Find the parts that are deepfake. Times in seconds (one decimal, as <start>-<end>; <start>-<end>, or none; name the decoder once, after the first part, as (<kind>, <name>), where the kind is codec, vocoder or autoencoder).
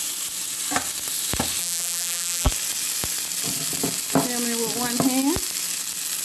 1.6-2.5 (vocoder, BigVGAN v2)